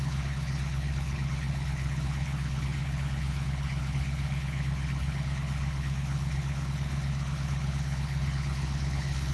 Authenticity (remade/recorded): remade